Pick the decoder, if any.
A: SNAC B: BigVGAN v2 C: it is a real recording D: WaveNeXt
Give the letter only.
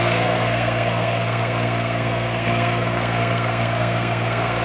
A